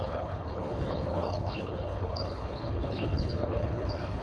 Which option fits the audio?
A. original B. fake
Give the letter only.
B